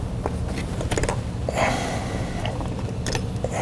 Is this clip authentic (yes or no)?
yes